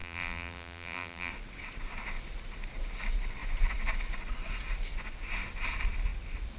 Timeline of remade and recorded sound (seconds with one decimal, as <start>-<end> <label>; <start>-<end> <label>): 0.0-1.3 remade; 1.3-6.6 recorded